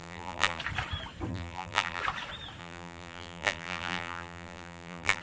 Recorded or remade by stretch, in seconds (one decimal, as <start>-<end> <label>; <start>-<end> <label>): 0.0-0.6 remade; 0.6-1.3 recorded; 1.3-2.0 remade; 2.0-2.6 recorded; 2.6-5.2 remade